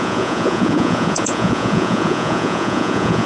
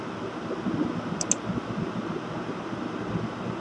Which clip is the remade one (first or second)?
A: first